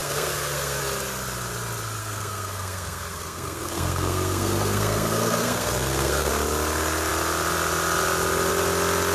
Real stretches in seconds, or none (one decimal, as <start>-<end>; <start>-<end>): 0.8-2.0; 6.3-9.1